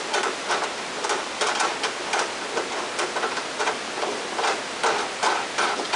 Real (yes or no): yes